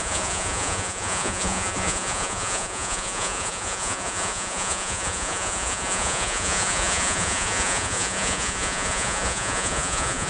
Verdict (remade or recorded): remade